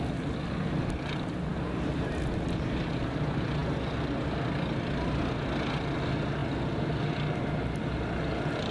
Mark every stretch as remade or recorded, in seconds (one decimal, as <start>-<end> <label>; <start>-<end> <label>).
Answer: 0.0-8.7 recorded